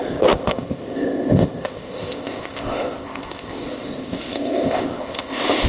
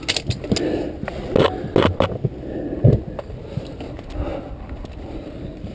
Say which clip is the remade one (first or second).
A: first